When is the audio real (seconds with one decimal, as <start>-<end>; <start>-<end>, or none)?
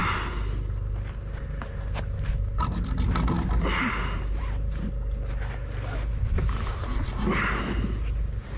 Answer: 0.0-8.6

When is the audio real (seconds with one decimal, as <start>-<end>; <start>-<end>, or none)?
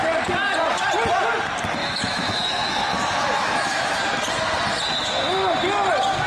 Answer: 0.0-1.8; 4.0-6.3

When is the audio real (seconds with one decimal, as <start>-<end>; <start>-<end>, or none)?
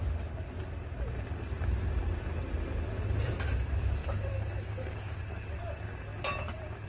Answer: 0.0-4.0; 5.2-6.9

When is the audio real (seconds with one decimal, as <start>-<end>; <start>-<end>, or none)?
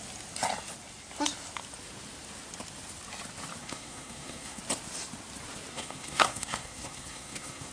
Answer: 0.0-3.6; 4.6-5.7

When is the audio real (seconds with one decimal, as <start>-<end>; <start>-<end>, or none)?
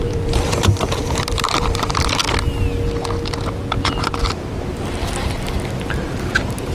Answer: 2.2-6.2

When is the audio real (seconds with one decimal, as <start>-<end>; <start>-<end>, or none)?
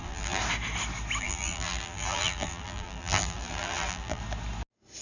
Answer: 0.4-1.2; 4.2-5.0